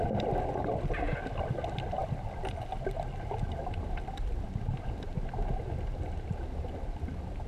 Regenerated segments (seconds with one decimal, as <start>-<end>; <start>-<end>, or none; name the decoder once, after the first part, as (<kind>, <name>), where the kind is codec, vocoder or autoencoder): none